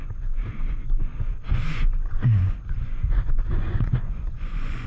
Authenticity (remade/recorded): remade